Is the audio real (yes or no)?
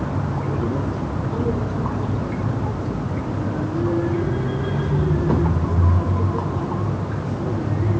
yes